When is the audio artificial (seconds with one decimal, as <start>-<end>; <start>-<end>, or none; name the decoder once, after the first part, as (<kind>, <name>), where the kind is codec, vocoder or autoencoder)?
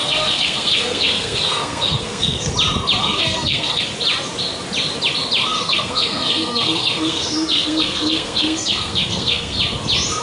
0.0-2.5 (codec, SNAC); 3.0-3.8; 5.4-9.6